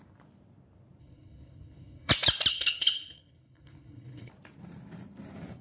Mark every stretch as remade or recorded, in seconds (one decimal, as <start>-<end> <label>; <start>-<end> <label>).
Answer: 0.0-1.0 recorded; 1.0-2.1 remade; 2.1-2.5 recorded; 2.5-4.3 remade; 4.3-5.6 recorded